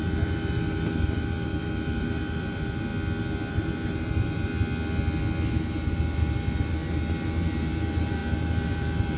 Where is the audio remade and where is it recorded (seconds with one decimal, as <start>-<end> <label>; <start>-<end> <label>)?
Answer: 0.0-2.9 remade; 2.9-3.5 recorded; 3.5-4.5 remade; 4.5-5.5 recorded; 5.5-9.2 remade